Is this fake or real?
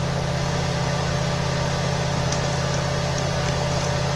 real